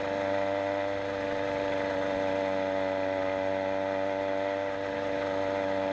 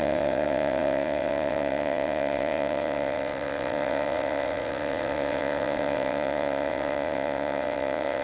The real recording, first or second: first